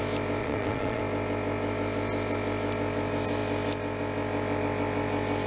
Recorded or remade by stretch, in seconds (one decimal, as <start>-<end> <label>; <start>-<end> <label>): 0.0-0.4 recorded; 0.4-1.0 remade; 1.0-5.5 recorded